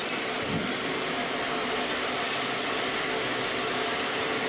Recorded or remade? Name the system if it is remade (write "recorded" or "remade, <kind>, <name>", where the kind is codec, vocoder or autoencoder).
recorded